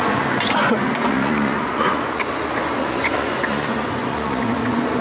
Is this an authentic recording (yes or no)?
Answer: no